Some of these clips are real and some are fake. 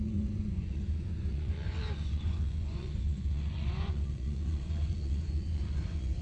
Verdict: fake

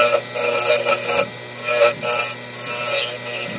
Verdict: real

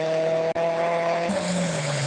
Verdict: fake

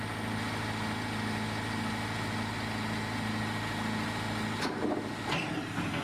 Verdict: real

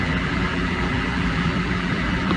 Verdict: fake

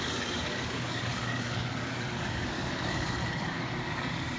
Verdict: fake